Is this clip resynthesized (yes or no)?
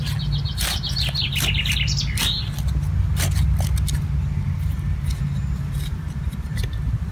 no